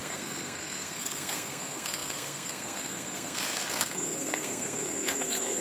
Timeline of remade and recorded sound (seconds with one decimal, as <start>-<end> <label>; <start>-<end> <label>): 0.0-5.6 remade